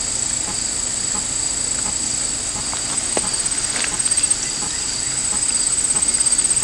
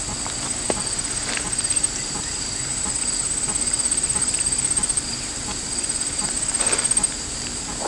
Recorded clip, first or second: first